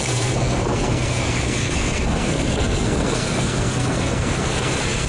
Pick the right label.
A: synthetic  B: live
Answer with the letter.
A